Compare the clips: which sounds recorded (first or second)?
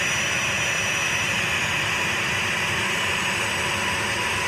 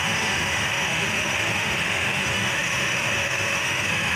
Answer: first